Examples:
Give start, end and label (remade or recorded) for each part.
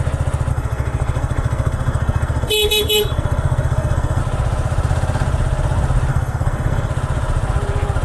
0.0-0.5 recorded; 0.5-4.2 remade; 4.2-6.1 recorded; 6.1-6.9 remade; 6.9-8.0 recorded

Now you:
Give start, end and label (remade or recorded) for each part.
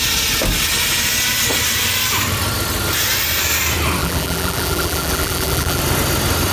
0.0-4.0 recorded; 4.0-5.8 remade; 5.8-6.5 recorded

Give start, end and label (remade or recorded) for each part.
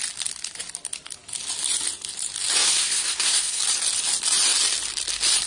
0.0-2.6 recorded; 2.6-3.6 remade; 3.6-5.5 recorded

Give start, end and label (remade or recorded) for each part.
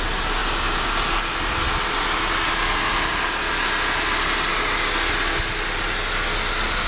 0.0-6.9 recorded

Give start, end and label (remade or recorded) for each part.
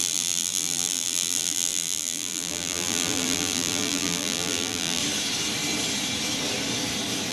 0.0-5.0 remade; 5.0-7.3 recorded